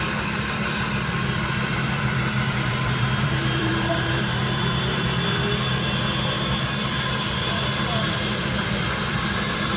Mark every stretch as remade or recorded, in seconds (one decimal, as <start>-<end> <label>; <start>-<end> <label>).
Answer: 0.0-5.5 remade; 5.5-6.0 recorded; 6.0-9.8 remade